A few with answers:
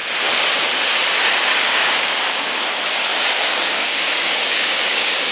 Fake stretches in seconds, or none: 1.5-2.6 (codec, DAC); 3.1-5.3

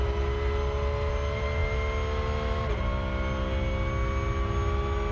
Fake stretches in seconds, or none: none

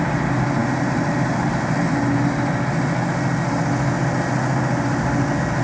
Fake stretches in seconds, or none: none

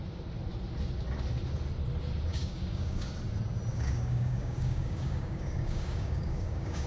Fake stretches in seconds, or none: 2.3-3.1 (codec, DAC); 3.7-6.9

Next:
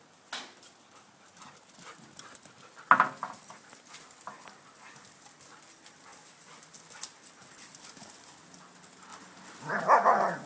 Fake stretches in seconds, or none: none